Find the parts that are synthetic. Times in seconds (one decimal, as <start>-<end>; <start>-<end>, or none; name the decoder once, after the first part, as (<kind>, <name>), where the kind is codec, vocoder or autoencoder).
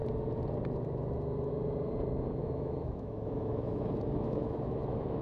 2.4-5.2 (autoencoder, DAC-VAE)